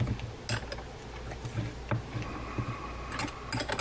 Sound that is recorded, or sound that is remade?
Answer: recorded